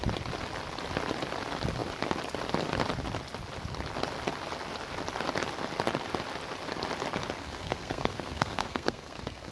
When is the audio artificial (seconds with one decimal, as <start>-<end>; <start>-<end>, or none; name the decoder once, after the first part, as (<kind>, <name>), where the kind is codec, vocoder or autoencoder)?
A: 7.4-9.5 (codec, SNAC)